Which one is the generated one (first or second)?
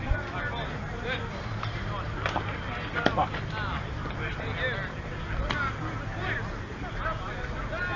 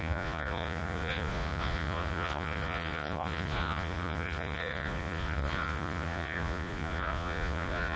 second